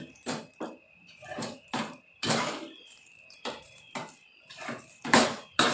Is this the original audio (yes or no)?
no